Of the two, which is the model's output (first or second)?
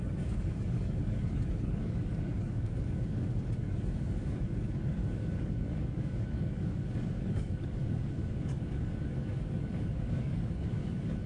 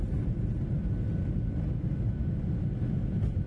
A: first